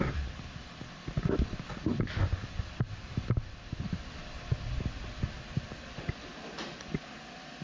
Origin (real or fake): real